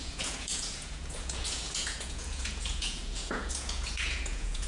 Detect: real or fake fake